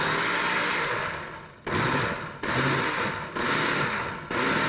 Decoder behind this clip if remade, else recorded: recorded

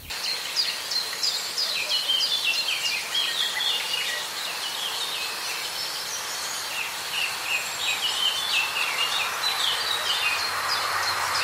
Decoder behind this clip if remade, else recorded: recorded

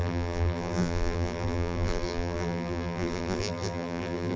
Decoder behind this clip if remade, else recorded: remade, vocoder, BigVGAN v2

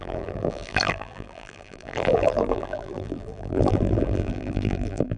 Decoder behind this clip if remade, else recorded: remade, vocoder, BigVGAN v2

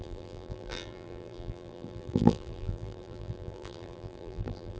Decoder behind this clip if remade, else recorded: remade, vocoder, BigVGAN v2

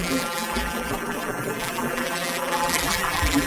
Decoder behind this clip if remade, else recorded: remade, vocoder, BigVGAN v2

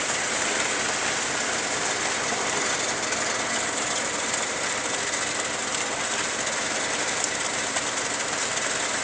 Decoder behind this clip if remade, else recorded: recorded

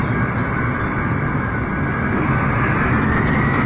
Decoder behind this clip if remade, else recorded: remade, vocoder, BigVGAN v2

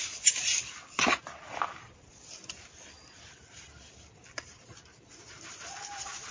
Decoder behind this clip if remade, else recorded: recorded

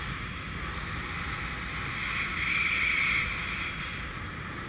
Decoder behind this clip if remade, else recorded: recorded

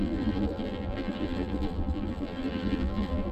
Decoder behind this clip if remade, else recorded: remade, vocoder, BigVGAN v2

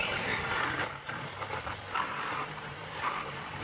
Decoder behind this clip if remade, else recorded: remade, vocoder, BigVGAN v2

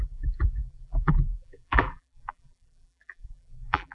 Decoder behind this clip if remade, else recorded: remade, vocoder, BigVGAN v2